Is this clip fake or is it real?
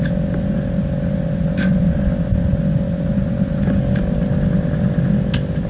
real